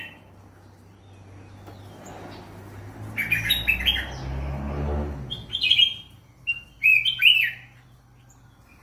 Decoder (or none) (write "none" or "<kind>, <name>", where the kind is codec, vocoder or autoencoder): none